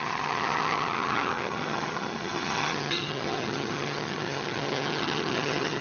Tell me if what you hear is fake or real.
fake